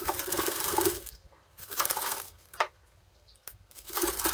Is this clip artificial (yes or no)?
yes